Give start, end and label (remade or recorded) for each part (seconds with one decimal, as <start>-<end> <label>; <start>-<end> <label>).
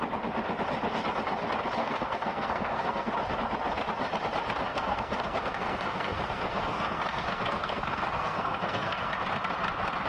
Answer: 0.0-1.8 recorded; 1.8-3.1 remade; 3.1-4.7 recorded; 4.7-9.1 remade; 9.1-10.1 recorded